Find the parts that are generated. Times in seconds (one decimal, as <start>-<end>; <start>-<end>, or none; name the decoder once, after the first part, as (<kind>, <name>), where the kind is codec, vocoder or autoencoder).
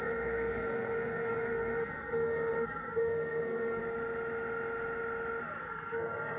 0.0-3.8 (codec, SNAC); 5.6-6.4